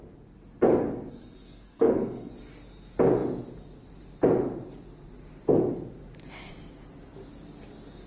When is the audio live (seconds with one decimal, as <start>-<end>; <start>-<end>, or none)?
0.0-1.1; 2.3-8.1